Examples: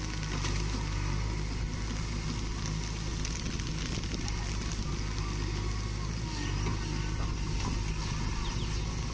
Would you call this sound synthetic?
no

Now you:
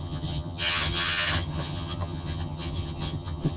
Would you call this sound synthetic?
yes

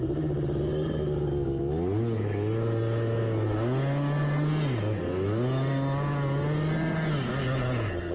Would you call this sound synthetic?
no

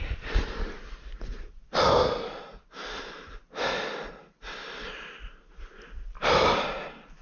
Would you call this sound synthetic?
no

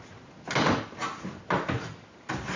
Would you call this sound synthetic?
no